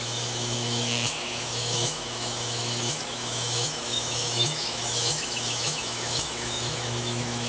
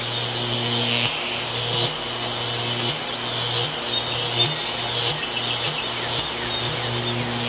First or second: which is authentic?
second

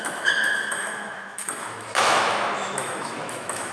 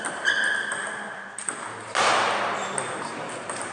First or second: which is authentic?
second